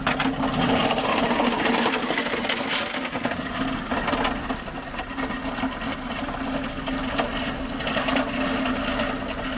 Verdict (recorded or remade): recorded